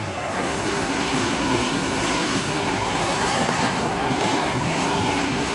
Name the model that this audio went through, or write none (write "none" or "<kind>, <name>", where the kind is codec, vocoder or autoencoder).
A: codec, SNAC